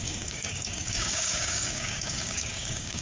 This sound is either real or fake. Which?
fake